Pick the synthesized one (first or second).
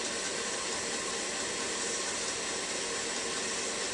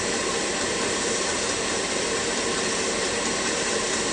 second